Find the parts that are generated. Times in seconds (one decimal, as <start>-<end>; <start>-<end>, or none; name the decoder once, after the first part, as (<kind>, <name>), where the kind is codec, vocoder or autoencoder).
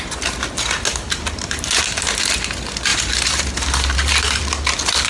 0.9-1.6 (vocoder, BigVGAN v2); 2.9-4.4